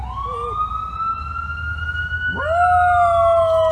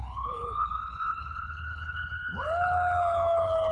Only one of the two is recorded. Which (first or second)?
first